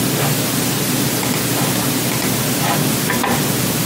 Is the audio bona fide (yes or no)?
yes